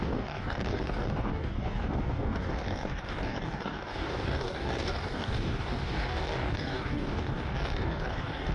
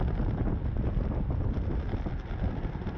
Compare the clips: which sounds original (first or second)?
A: second